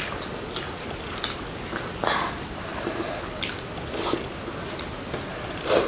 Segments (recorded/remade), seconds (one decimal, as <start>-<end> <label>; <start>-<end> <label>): 0.0-5.9 recorded